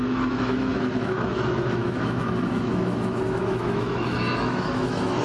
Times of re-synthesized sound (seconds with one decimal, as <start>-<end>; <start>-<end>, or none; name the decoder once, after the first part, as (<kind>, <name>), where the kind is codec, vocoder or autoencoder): 0.0-5.2 (autoencoder, DAC-VAE)